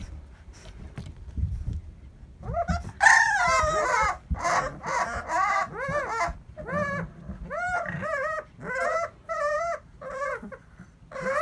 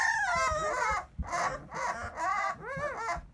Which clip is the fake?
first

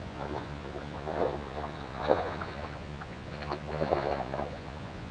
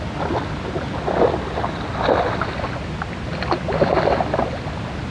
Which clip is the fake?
first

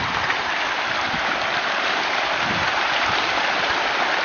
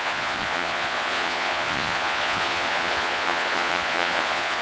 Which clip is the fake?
second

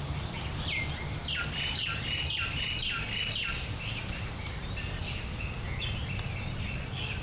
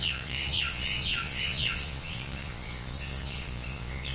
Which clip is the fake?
second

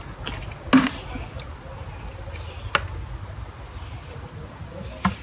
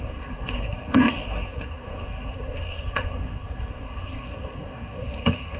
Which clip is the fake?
second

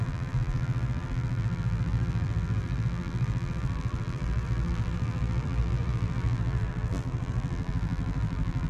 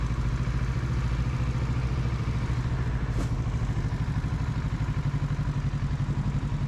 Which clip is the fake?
first